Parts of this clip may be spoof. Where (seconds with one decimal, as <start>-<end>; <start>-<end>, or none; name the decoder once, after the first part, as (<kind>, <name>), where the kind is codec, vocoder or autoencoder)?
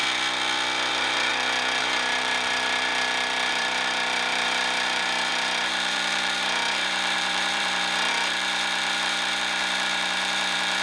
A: 0.9-1.3 (vocoder, BigVGAN v2); 1.8-2.9; 3.5-10.8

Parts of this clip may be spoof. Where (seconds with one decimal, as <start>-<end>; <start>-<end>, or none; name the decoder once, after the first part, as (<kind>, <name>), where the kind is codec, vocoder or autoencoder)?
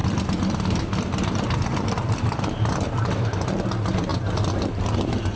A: 0.0-5.4 (vocoder, BigVGAN v2)